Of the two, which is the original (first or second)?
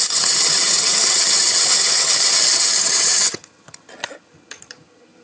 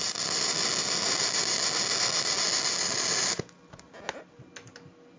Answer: second